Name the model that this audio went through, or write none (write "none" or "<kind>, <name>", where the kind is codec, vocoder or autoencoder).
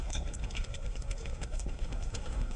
codec, SNAC